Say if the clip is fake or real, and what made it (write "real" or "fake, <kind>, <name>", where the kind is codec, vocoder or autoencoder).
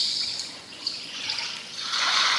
fake, vocoder, Vocos